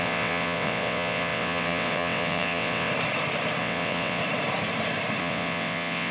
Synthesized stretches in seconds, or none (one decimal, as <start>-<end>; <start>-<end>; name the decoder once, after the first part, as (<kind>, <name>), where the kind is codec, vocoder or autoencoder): 0.0-2.9 (vocoder, WaveNeXt); 3.6-4.2; 5.2-6.1